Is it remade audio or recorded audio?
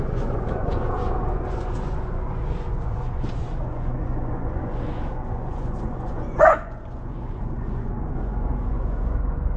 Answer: remade